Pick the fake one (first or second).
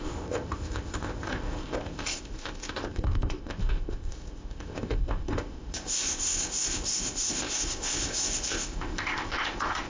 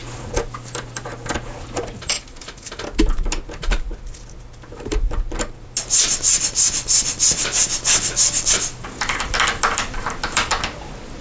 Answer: first